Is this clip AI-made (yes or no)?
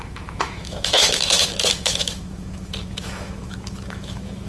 yes